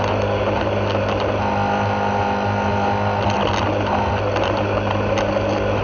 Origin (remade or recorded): recorded